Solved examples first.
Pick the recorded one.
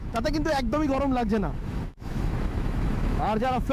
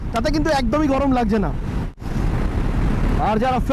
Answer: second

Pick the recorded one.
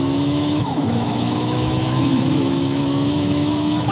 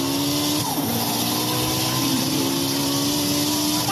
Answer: second